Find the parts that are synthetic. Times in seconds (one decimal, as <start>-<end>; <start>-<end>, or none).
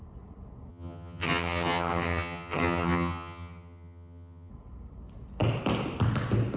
0.7-4.5